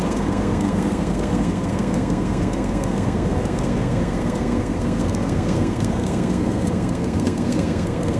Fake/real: fake